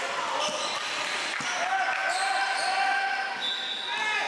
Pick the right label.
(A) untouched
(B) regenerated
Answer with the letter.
A